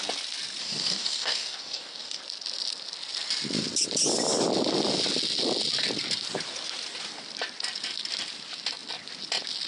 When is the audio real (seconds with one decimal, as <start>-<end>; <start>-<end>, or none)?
0.0-0.6; 2.2-9.7